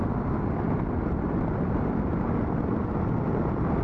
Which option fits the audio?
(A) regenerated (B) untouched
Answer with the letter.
B